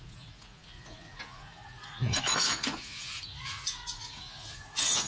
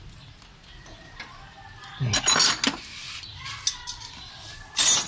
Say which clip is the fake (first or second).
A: first